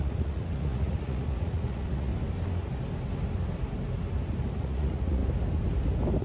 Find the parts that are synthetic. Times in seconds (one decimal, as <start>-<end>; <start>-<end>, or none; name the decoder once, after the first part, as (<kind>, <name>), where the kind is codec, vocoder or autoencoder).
0.0-2.1 (vocoder, Vocos); 4.6-5.2

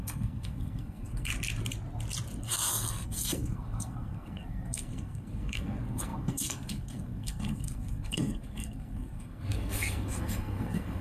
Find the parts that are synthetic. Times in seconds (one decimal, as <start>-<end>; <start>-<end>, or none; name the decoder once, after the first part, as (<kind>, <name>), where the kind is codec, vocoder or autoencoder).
0.0-1.3 (codec, SNAC); 2.4-11.0

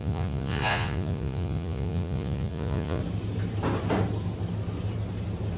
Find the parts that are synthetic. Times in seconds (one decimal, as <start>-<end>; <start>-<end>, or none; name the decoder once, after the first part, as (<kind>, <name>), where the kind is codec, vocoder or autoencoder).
0.0-3.0 (vocoder, Vocos)